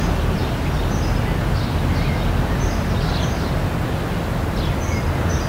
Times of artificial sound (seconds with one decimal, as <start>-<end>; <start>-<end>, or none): none